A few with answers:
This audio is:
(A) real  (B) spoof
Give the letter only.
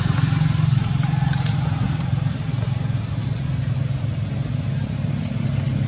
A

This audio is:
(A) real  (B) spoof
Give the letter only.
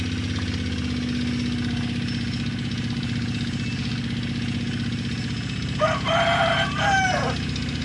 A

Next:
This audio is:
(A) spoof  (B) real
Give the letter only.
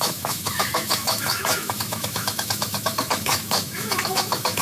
A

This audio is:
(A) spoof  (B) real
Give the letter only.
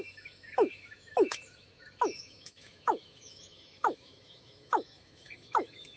A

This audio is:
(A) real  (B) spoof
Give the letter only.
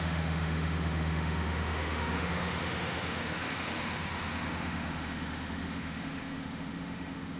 B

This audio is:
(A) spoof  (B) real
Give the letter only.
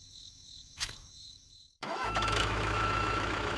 A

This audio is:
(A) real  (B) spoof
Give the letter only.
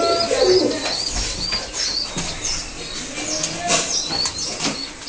A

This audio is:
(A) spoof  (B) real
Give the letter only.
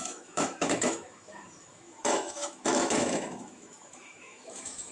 A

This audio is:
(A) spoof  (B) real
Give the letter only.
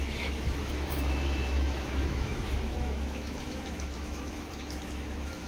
A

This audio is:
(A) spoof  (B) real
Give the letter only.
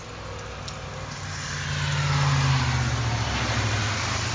B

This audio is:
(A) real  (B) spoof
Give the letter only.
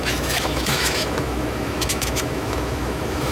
B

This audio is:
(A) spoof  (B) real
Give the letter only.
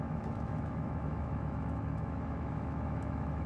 A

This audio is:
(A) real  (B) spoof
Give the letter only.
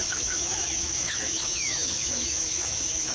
B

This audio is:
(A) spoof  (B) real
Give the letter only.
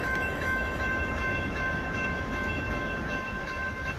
A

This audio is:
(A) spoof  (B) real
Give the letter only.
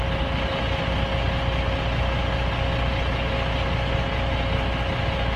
B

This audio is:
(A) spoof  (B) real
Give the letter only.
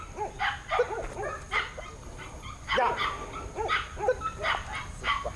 B